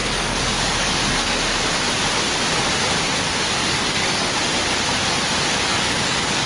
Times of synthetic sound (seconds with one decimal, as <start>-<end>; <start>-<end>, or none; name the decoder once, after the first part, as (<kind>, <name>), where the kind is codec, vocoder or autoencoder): 0.0-1.4 (codec, DAC); 3.6-4.3; 5.7-6.5